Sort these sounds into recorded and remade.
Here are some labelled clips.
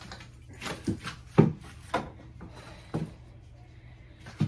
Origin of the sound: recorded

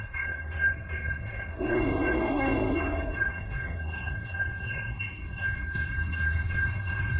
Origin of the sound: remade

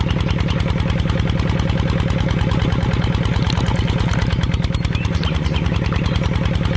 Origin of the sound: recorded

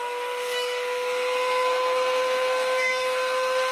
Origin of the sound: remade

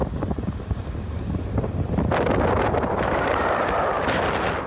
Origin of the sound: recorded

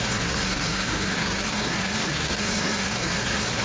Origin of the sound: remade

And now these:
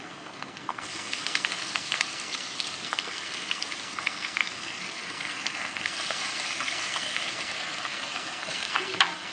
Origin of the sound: remade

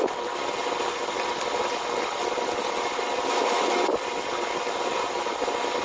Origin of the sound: recorded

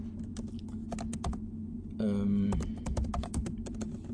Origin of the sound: recorded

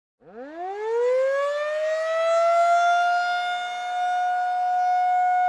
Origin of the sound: recorded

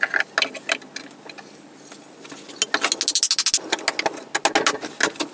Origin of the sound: recorded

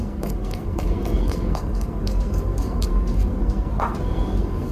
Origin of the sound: remade